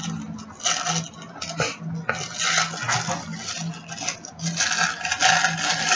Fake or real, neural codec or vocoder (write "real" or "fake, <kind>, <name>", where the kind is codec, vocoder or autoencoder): real